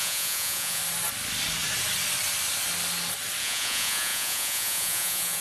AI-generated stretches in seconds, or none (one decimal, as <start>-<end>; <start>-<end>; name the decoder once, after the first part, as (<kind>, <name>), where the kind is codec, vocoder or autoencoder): 0.0-0.8 (vocoder, Vocos); 3.4-5.4